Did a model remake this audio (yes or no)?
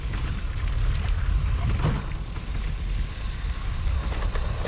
no